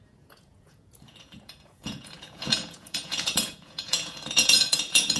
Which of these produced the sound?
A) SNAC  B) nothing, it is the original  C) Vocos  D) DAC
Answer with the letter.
C